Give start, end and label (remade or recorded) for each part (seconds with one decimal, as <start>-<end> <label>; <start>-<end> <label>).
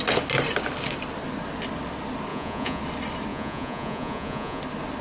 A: 0.0-2.3 recorded; 2.3-2.8 remade; 2.8-3.3 recorded; 3.3-4.6 remade; 4.6-5.0 recorded